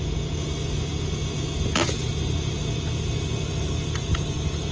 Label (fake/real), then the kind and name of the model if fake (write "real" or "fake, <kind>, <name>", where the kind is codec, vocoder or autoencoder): real